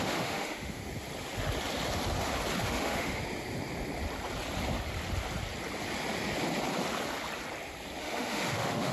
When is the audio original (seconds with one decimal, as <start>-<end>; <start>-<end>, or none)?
0.8-2.6; 3.2-8.0